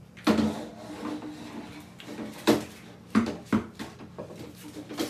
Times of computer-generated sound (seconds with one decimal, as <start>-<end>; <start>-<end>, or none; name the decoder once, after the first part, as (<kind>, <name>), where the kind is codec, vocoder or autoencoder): none